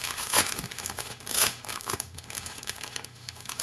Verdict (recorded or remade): remade